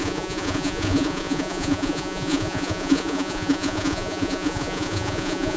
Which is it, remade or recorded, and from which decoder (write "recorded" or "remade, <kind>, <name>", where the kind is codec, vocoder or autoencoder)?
remade, vocoder, Vocos